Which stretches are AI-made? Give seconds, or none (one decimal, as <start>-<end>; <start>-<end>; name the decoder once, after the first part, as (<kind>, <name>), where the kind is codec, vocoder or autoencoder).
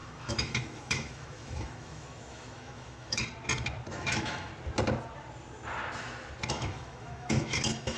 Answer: 0.0-3.2 (autoencoder, DAC-VAE); 3.9-4.5; 6.5-8.0